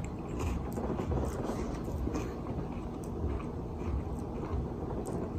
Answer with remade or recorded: recorded